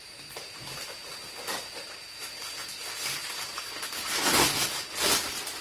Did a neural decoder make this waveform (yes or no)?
no